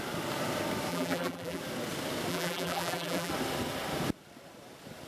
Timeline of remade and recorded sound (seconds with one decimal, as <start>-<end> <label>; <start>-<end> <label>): 0.0-0.9 recorded; 0.9-1.6 remade; 1.6-2.3 recorded; 2.3-3.3 remade; 3.3-5.1 recorded